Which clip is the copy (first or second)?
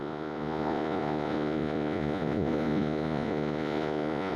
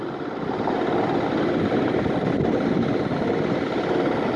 first